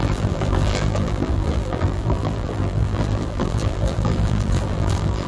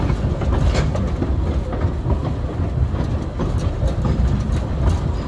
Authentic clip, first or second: second